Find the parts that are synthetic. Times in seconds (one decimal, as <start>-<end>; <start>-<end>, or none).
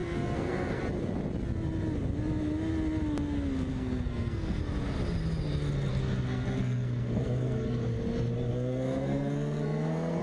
0.0-0.8; 3.7-4.6; 5.9-7.8; 8.5-10.2